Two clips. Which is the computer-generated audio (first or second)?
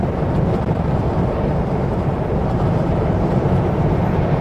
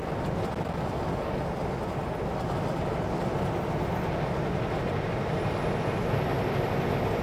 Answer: first